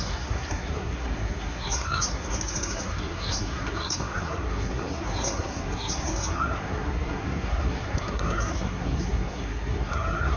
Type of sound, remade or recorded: remade